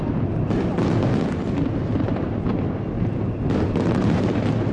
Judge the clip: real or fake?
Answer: real